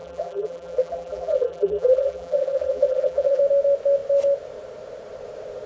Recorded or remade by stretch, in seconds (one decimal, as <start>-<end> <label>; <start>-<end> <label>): 0.0-3.4 remade; 3.4-5.7 recorded